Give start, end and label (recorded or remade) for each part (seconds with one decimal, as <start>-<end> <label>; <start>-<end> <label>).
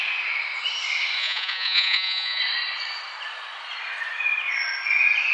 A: 0.0-1.2 recorded; 1.2-2.4 remade; 2.4-5.3 recorded